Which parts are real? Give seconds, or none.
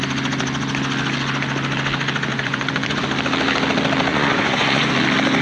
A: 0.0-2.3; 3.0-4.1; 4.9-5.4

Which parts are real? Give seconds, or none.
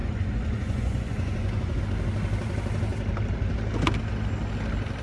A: 1.8-5.0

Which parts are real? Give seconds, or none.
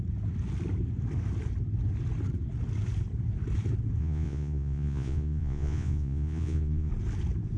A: 0.0-4.0; 6.9-7.6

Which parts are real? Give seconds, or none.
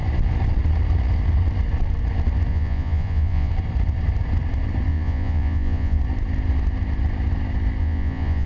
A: 0.0-2.5; 3.5-4.9; 6.0-7.8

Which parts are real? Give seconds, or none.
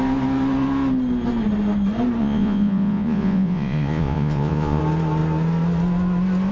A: 0.0-2.2; 4.8-6.5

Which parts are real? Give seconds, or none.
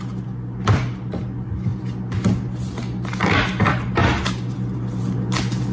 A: 0.0-5.7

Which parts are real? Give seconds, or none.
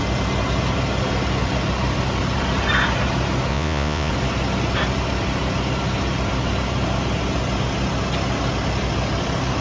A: 0.0-3.5; 4.1-9.6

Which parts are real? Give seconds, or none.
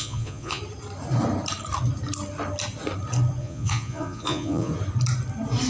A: 0.6-3.4; 4.7-5.7